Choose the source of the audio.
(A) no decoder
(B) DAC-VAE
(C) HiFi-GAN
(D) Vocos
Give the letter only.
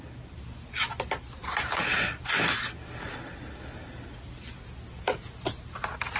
A